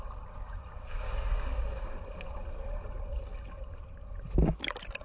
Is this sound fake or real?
real